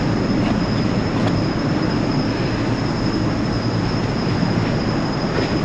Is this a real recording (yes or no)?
yes